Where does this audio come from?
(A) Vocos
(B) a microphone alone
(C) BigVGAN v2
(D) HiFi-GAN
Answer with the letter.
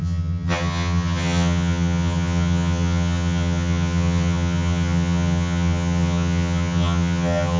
D